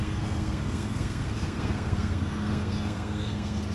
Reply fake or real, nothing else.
fake